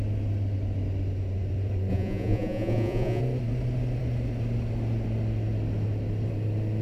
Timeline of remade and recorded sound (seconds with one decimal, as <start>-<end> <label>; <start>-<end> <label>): 0.0-1.9 recorded; 1.9-3.2 remade; 3.2-6.8 recorded